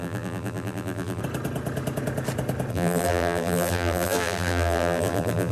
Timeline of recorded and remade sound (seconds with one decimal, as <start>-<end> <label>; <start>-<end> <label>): 0.0-1.2 remade; 1.2-2.7 recorded; 2.7-5.5 remade